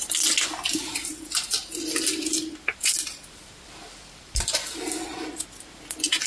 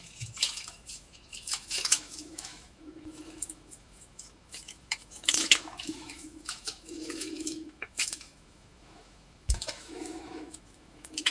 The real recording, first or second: first